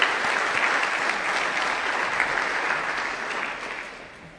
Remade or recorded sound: recorded